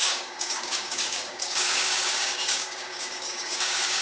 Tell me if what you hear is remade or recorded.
remade